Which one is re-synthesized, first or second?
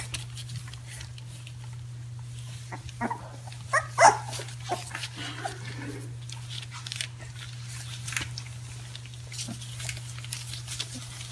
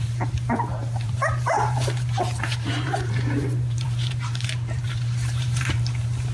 second